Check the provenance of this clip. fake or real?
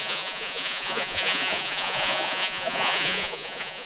fake